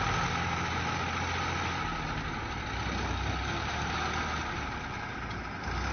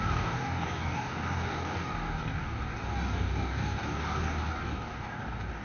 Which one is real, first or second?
first